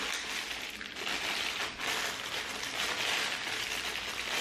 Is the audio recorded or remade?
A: recorded